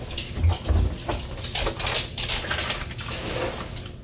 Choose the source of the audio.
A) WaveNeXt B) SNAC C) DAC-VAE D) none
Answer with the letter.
D